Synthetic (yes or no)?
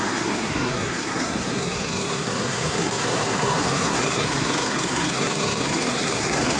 yes